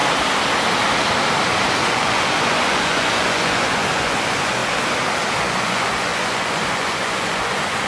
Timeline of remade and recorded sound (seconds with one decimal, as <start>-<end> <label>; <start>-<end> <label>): 0.0-1.7 recorded; 1.7-4.6 remade; 4.6-5.4 recorded; 5.4-7.9 remade